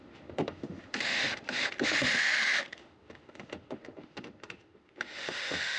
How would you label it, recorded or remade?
remade